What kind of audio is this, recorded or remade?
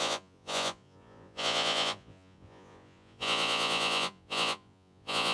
remade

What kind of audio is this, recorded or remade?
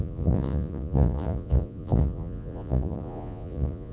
remade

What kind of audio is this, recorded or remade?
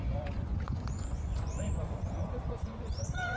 remade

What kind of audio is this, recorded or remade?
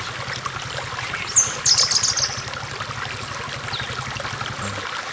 recorded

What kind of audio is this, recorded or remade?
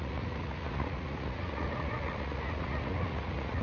remade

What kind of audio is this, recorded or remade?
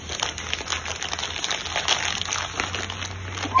recorded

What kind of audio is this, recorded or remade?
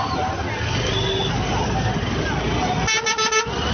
recorded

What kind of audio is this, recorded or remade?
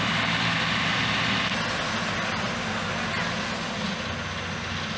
recorded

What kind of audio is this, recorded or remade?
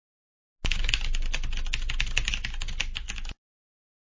recorded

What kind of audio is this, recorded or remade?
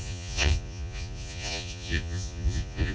remade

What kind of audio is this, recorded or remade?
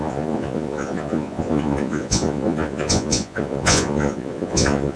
remade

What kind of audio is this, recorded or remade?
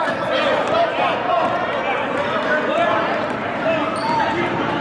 recorded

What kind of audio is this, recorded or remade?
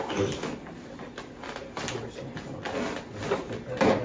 recorded